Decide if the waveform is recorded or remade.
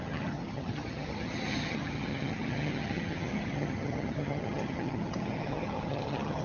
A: remade